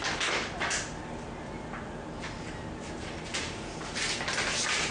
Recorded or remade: recorded